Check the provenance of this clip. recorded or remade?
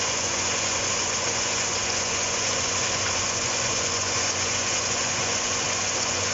remade